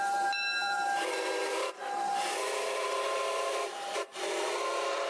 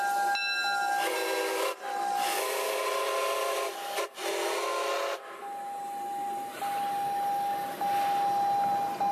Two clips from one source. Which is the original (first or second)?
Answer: second